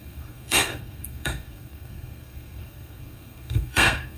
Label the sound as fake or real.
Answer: fake